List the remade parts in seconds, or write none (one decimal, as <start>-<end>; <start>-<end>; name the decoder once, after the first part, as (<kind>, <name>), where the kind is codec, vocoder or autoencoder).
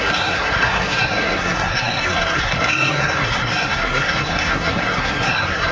0.0-5.7 (codec, SNAC)